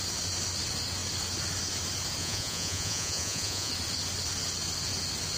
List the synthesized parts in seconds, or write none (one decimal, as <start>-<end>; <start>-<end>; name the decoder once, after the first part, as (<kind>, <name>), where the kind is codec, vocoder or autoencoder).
2.2-3.7 (vocoder, Vocos)